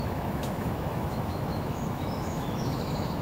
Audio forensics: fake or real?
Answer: fake